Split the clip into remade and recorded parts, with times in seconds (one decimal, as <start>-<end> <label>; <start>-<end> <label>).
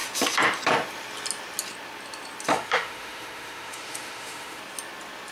0.0-2.5 recorded; 2.5-4.6 remade; 4.6-5.3 recorded